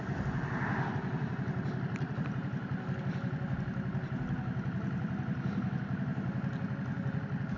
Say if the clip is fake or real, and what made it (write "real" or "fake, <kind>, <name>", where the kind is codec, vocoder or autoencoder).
real